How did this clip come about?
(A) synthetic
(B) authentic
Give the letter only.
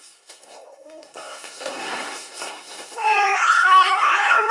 A